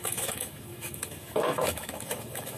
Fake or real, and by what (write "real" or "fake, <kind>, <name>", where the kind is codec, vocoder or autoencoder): fake, autoencoder, DAC-VAE